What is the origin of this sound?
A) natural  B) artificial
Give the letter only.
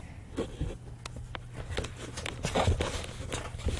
A